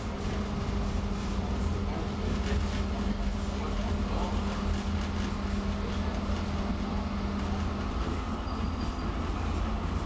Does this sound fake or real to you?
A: real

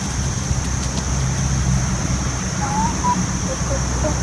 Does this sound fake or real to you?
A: real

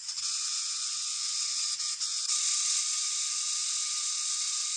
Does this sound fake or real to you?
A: fake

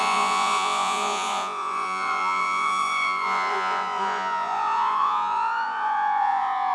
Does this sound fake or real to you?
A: fake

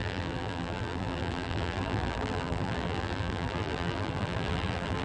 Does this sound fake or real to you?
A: fake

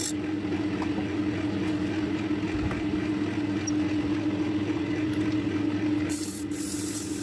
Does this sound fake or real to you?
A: real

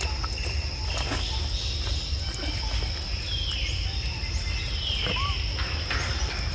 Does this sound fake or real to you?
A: real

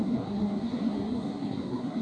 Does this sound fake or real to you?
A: fake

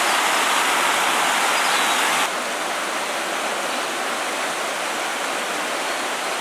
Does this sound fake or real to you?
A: real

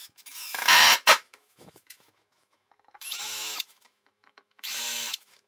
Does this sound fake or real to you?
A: fake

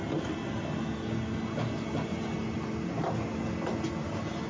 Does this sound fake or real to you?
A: real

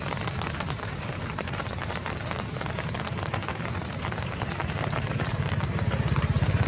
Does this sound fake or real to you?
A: fake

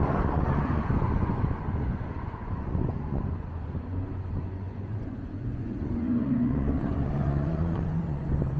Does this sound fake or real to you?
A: fake